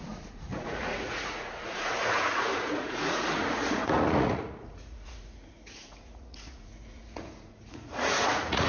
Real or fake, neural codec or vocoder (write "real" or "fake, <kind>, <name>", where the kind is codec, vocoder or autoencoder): fake, vocoder, Vocos